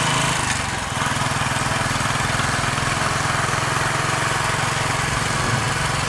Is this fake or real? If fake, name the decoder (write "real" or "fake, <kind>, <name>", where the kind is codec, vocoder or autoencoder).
real